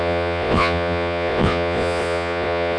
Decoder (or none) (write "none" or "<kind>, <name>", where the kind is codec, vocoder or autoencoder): vocoder, Vocos